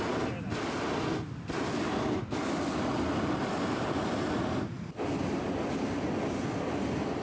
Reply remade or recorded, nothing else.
recorded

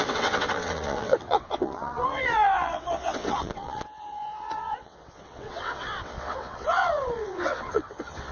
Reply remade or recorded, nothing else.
remade